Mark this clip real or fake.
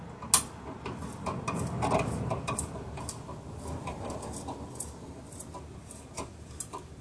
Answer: real